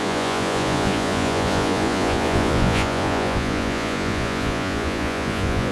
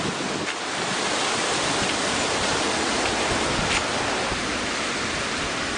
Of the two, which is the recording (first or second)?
second